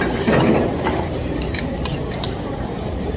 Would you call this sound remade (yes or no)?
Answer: yes